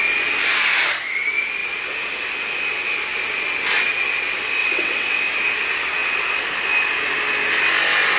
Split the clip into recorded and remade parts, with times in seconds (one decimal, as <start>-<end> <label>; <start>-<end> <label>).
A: 0.0-4.6 recorded; 4.6-5.2 remade; 5.2-8.2 recorded